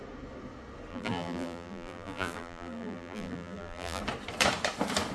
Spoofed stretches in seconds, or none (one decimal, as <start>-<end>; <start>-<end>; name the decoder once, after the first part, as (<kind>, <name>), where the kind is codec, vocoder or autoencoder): 0.9-4.0 (vocoder, BigVGAN v2)